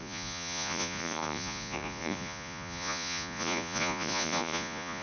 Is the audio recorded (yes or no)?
no